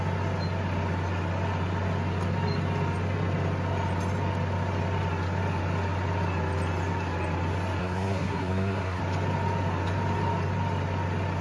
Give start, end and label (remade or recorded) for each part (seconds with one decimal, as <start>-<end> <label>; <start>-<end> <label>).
0.0-7.8 recorded; 7.8-9.0 remade; 9.0-11.4 recorded